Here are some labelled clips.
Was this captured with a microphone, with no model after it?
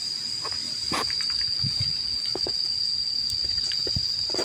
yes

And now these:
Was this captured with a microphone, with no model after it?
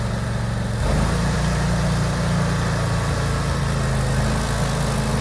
yes